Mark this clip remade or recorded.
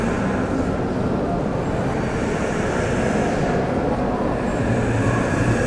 recorded